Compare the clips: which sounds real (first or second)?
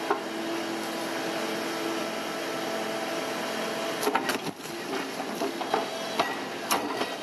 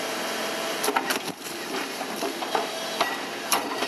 first